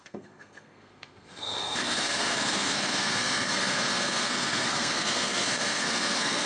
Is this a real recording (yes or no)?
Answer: no